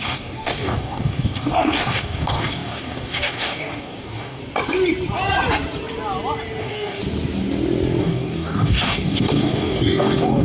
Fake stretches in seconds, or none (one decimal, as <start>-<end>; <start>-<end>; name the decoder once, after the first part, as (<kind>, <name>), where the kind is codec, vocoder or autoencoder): 0.0-4.4 (codec, DAC); 6.6-7.0; 8.0-10.4